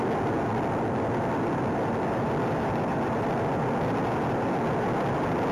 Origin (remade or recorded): recorded